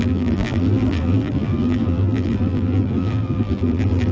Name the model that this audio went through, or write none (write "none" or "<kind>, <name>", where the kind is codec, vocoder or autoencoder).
vocoder, BigVGAN v2